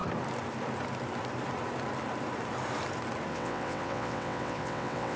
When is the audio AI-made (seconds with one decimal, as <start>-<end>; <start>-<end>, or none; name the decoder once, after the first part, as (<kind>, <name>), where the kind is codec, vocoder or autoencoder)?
3.3-5.2 (vocoder, WaveNeXt)